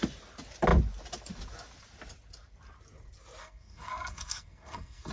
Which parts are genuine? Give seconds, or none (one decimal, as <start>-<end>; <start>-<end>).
0.0-3.4